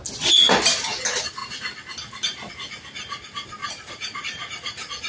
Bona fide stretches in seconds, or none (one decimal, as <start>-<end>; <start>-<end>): 0.0-3.6